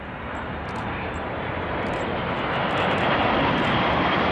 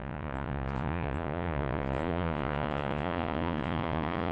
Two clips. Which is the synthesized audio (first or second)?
second